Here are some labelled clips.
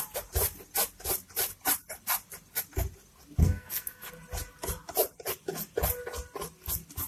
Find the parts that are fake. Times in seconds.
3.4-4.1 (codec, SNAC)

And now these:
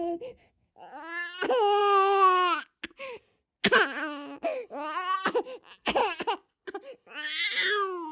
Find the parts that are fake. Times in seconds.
0.0-0.7 (codec, SNAC)

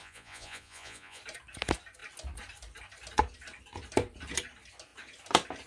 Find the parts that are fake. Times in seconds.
0.0-1.2 (vocoder, Vocos)

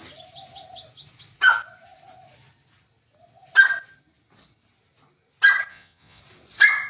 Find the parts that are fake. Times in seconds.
5.7-6.2 (vocoder, Vocos)

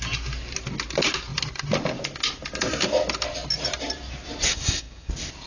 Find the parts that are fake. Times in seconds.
4.5-5.1 (codec, DAC)

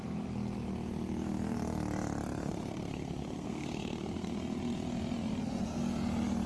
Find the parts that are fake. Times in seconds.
2.4-4.3 (codec, SNAC)

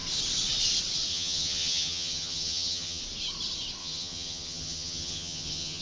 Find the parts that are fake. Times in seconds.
1.1-3.0 (vocoder, HiFi-GAN); 3.8-5.8

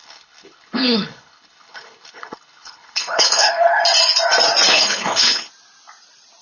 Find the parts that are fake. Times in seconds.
0.0-3.8 (codec, HILCodec); 4.7-5.5